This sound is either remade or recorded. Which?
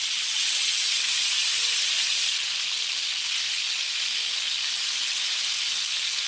recorded